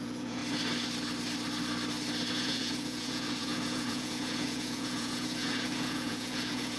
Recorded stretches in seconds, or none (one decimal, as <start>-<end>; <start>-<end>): 0.4-2.3